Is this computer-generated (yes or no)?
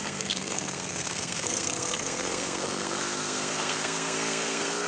yes